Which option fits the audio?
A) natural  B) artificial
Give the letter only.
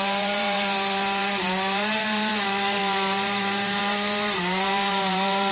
B